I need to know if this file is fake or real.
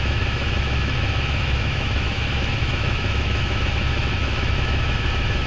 fake